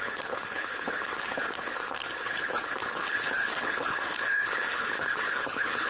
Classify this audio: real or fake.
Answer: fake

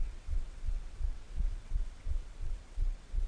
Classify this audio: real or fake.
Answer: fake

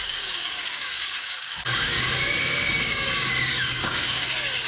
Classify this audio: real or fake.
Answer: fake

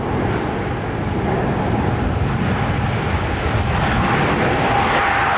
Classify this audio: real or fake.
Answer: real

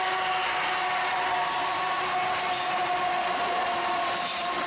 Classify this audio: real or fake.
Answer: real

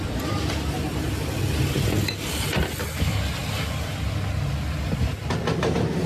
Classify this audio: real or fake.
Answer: real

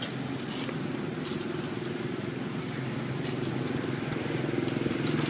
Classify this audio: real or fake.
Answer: real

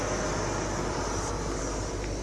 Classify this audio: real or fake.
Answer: real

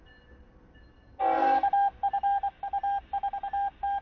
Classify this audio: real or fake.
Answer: real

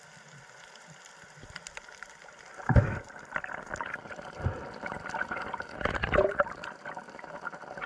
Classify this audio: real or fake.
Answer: fake